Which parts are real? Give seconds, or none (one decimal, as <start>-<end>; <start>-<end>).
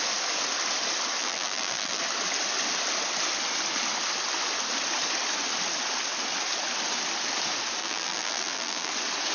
0.0-1.2; 2.0-7.8; 8.9-9.3